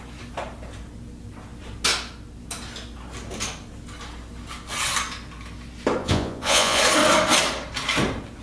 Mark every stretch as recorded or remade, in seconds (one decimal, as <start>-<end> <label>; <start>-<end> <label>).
0.0-6.0 recorded; 6.0-6.8 remade; 6.8-8.4 recorded